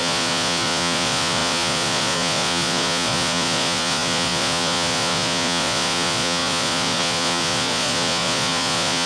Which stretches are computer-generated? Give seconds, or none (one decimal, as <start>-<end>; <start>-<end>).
0.0-9.1